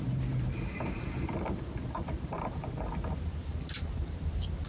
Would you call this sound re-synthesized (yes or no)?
yes